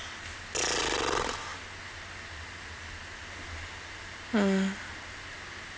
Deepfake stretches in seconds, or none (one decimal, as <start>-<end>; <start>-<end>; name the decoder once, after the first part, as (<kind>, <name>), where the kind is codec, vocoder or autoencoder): none